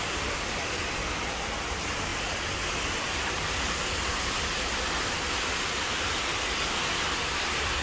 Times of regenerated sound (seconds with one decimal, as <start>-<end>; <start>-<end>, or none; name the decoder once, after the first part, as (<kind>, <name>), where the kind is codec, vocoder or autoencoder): none